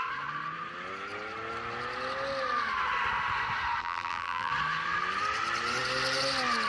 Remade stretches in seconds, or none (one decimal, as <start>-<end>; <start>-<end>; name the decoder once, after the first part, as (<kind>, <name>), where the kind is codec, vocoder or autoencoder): 3.8-4.5 (vocoder, BigVGAN v2)